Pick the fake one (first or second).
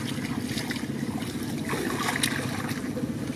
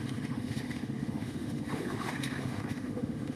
second